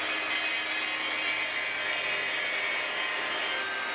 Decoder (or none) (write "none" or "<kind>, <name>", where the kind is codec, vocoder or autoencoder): none